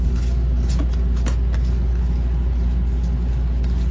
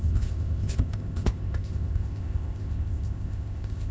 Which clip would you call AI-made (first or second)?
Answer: second